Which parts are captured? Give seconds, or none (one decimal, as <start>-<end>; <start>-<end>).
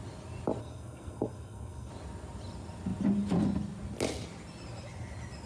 0.0-0.6; 1.9-5.5